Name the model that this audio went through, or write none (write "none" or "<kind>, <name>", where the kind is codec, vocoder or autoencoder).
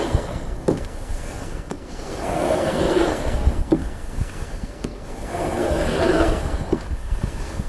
codec, SNAC